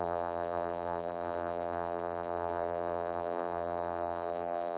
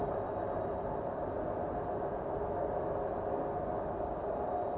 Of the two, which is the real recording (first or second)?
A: second